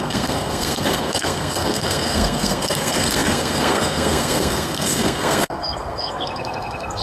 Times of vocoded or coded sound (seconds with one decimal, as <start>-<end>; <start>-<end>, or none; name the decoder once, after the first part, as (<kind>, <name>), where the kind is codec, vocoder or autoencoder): 0.0-7.0 (codec, SNAC)